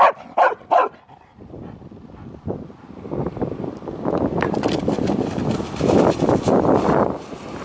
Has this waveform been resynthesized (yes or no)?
no